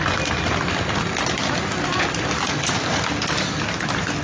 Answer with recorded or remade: recorded